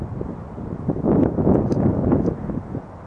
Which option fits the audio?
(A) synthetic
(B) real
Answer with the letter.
B